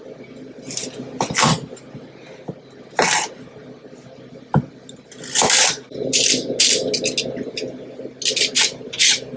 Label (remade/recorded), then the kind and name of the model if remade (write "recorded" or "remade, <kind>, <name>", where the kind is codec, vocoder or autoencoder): recorded